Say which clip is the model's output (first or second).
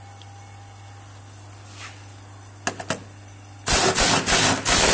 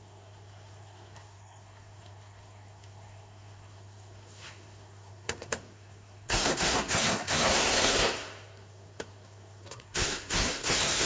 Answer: second